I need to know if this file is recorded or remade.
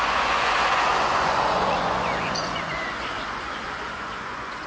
remade